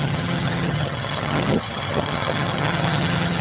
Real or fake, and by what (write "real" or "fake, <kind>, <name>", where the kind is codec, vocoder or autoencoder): fake, vocoder, HiFi-GAN